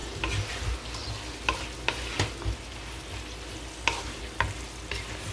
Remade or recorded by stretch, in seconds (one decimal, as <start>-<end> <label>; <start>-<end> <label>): 0.0-5.3 recorded